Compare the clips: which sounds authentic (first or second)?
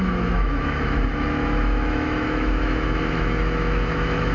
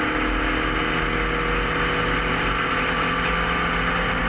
second